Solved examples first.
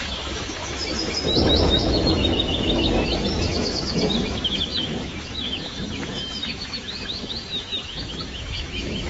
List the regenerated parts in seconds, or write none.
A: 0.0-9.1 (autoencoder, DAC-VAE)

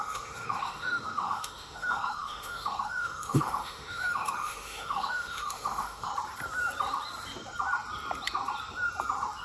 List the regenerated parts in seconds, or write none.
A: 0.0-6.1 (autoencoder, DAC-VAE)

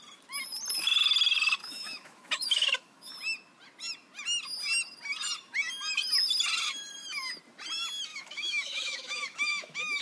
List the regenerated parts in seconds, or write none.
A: 1.6-3.1 (autoencoder, DAC-VAE); 8.1-10.0

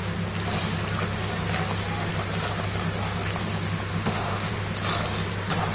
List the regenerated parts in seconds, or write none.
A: 3.9-4.5 (autoencoder, DAC-VAE)